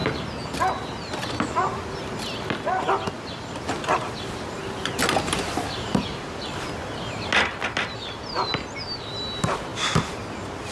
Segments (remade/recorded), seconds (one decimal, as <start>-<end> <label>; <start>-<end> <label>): 0.0-10.7 recorded